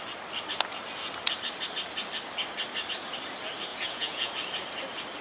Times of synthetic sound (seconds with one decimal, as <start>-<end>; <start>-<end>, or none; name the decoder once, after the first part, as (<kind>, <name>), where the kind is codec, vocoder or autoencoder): 3.7-4.3 (vocoder, Vocos)

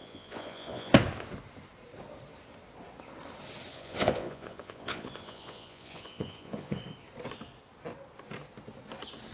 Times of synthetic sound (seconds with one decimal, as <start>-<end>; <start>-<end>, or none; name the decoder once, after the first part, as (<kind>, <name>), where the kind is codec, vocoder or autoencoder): 0.0-0.9 (vocoder, Vocos); 3.7-6.8

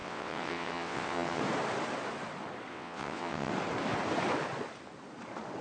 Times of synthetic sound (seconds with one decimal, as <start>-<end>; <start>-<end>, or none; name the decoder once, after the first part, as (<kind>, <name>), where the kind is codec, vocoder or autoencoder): 0.0-1.4 (vocoder, WaveNeXt); 2.7-3.5

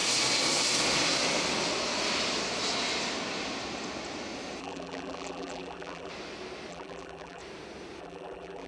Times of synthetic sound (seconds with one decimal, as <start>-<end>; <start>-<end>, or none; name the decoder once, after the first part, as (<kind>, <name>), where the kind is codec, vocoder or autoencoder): 4.6-6.1 (vocoder, BigVGAN v2); 6.7-7.4; 8.0-8.7

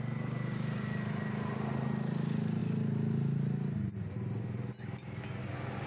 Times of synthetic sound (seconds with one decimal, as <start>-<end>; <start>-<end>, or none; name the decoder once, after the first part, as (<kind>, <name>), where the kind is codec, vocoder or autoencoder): none

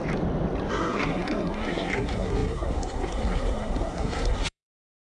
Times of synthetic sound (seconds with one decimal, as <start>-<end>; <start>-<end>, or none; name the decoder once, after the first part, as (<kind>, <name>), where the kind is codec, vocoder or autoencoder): 0.7-5.2 (codec, SNAC)

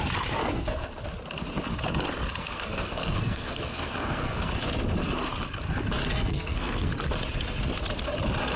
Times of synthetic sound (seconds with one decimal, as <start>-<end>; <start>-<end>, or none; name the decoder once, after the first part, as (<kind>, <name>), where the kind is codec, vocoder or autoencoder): 0.4-0.9 (codec, SNAC); 2.4-4.5; 6.0-6.9